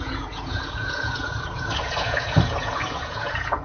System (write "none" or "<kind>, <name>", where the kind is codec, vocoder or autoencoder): vocoder, Vocos